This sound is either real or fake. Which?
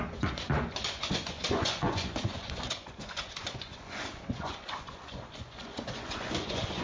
fake